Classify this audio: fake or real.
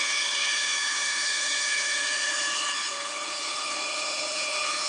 fake